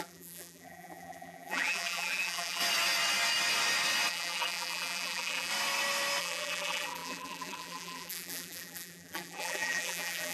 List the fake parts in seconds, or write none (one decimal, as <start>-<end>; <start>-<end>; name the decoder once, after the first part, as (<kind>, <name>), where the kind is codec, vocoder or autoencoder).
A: 0.0-2.6 (vocoder, BigVGAN v2); 4.1-5.5; 6.2-10.3